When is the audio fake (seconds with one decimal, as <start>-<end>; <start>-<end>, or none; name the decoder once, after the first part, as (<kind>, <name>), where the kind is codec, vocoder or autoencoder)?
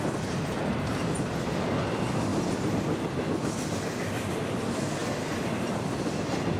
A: none